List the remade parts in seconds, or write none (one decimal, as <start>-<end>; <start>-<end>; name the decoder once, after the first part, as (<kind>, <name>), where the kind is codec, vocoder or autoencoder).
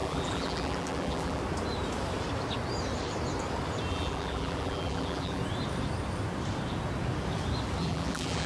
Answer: 0.0-1.4 (vocoder, BigVGAN v2); 3.9-5.4; 7.8-8.5